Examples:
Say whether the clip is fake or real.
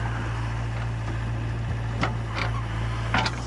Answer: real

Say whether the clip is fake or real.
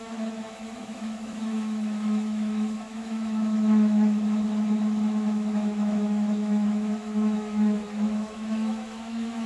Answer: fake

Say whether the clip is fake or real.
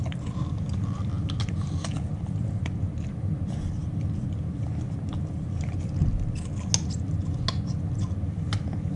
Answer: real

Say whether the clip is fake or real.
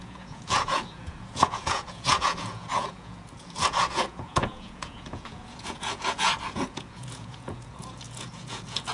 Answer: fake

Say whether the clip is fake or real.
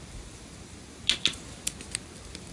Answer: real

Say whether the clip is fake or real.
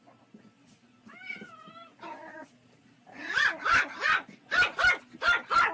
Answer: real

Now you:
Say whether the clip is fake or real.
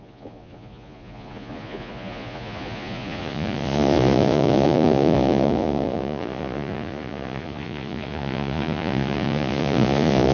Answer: fake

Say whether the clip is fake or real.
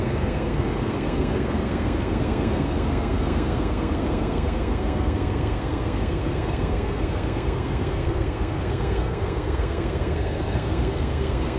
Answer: fake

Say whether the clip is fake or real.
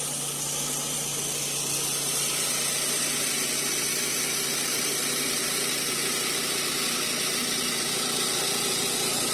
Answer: real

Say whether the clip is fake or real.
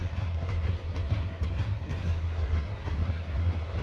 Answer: fake